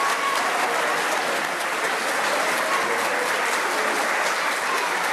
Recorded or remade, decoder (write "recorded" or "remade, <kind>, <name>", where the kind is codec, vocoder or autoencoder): recorded